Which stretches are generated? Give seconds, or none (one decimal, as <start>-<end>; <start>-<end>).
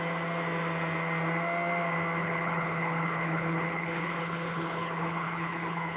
2.2-6.0